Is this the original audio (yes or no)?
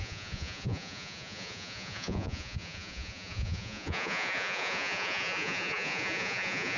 no